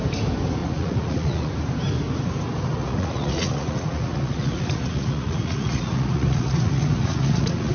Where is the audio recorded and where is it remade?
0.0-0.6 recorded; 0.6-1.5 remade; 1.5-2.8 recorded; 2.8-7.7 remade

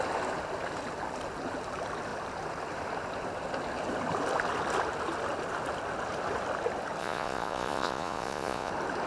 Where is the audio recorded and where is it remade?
0.0-7.0 recorded; 7.0-8.7 remade; 8.7-9.1 recorded

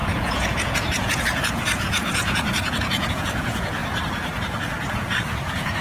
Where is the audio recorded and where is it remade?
0.0-3.8 remade; 3.8-4.9 recorded; 4.9-5.8 remade

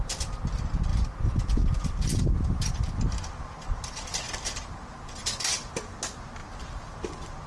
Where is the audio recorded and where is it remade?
0.0-7.5 recorded

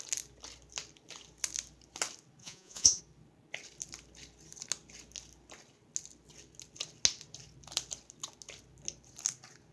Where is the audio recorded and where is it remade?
0.0-2.4 recorded; 2.4-3.0 remade; 3.0-9.7 recorded

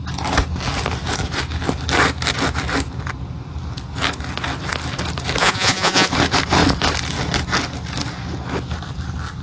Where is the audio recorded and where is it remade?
0.0-5.4 recorded; 5.4-6.1 remade; 6.1-9.4 recorded

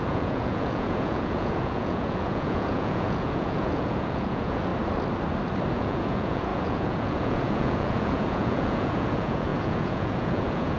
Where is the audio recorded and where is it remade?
0.0-4.7 remade; 4.7-5.7 recorded; 5.7-10.8 remade

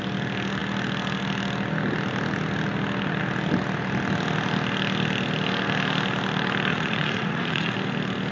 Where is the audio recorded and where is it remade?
0.0-6.7 recorded; 6.7-7.7 remade; 7.7-8.3 recorded